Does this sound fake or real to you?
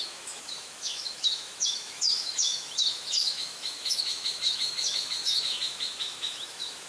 fake